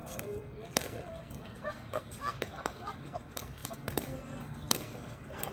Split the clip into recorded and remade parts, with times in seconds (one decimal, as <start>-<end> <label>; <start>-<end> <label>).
0.0-5.5 remade